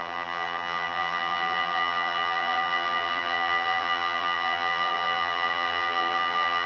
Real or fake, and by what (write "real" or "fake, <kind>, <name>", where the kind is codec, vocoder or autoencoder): fake, vocoder, BigVGAN v2